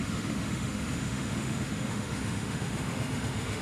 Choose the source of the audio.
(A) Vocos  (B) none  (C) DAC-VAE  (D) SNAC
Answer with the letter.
C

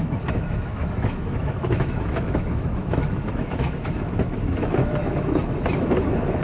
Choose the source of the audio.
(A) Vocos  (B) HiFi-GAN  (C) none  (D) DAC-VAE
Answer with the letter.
D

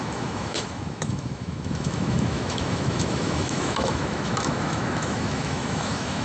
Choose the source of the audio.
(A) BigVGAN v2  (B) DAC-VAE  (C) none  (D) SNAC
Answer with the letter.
B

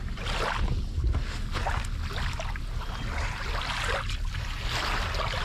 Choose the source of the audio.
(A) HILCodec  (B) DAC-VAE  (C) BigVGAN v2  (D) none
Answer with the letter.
D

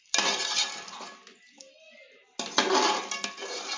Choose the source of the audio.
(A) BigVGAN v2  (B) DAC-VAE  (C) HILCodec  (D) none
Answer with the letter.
D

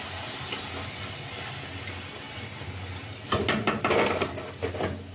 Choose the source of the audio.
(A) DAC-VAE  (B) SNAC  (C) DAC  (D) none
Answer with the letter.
D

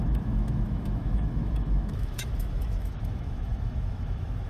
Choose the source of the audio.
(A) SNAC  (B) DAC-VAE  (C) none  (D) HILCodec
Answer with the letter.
B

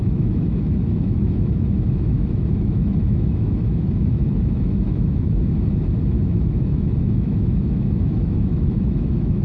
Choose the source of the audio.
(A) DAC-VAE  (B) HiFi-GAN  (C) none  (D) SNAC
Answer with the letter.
A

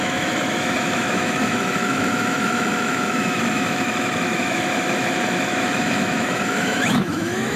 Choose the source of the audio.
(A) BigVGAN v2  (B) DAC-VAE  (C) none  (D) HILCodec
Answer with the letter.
B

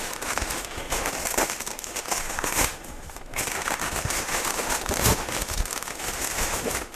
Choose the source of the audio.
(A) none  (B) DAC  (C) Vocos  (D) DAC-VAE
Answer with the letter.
D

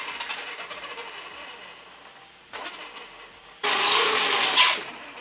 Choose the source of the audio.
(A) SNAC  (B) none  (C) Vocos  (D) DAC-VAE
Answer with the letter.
B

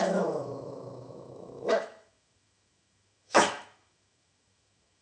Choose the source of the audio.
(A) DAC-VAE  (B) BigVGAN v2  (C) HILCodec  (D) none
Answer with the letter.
A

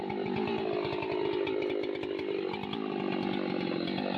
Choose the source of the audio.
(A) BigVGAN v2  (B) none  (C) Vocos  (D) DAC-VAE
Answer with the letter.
B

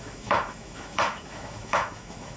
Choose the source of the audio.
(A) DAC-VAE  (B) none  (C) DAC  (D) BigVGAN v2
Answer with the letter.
A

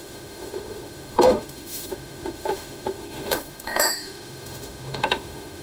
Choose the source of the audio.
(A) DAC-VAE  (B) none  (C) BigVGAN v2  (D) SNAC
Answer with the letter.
A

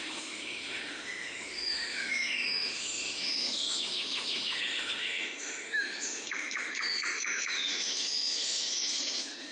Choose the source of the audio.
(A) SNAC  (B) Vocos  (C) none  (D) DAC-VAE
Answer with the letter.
D